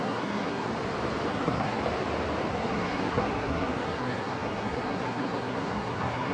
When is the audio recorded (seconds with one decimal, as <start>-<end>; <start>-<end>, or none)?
0.7-1.3; 1.8-2.5